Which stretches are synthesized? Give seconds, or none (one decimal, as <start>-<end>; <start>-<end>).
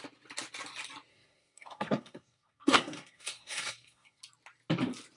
1.1-4.2